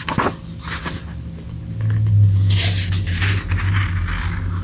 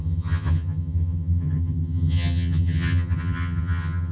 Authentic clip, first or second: first